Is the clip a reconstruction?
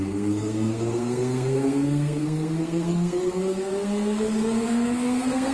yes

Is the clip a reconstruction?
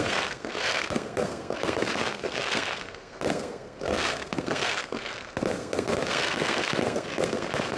yes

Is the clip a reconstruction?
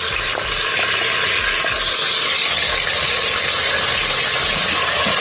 no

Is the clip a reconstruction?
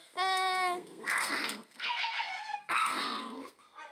yes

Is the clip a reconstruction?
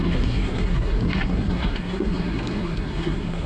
yes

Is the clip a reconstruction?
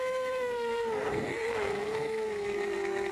yes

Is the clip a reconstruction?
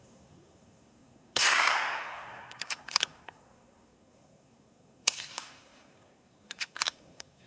yes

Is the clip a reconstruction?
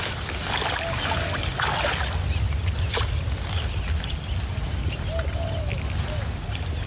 no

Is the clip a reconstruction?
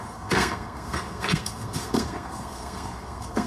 yes